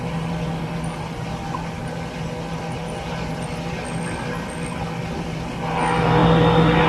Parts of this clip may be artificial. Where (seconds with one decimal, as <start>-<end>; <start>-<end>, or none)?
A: none